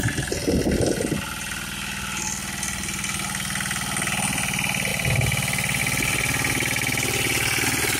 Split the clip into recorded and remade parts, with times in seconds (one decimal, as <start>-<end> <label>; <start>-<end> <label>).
0.0-8.0 recorded